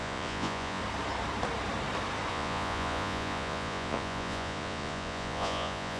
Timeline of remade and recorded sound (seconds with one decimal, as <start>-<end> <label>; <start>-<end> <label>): 0.0-0.8 remade; 0.8-2.3 recorded; 2.3-6.0 remade